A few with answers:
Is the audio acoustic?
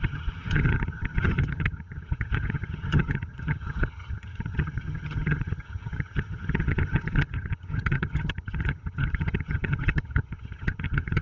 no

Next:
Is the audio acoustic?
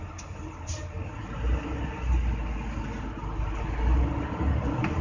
yes